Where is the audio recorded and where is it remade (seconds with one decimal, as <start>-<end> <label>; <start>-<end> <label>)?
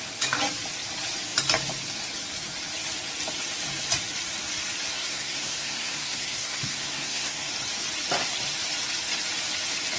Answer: 0.0-4.9 recorded; 4.9-7.5 remade; 7.5-10.0 recorded